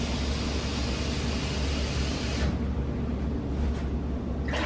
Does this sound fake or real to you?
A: real